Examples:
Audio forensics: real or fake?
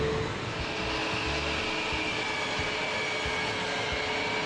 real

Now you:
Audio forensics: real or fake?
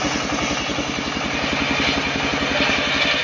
real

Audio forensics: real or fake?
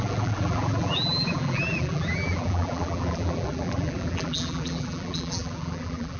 fake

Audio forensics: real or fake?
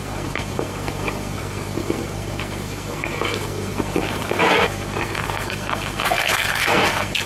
fake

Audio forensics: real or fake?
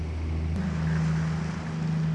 real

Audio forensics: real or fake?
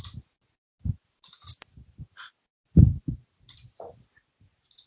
real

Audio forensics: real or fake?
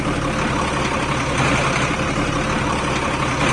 real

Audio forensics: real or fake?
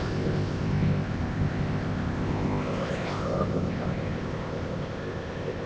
fake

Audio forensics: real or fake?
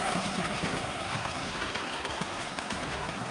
fake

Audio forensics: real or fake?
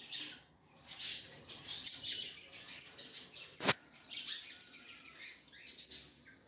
real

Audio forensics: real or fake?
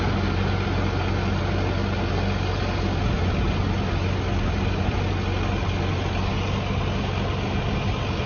real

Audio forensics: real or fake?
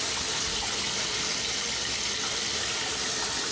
real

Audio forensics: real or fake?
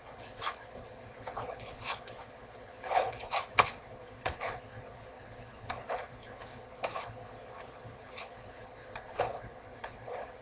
fake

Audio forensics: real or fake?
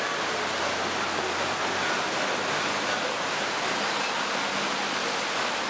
real